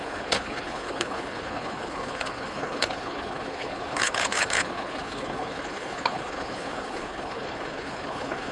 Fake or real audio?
fake